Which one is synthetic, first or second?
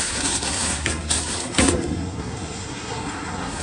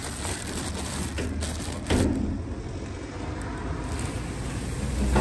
first